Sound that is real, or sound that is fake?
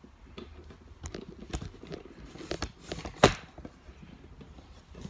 real